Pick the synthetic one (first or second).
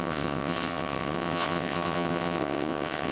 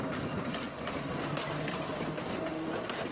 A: first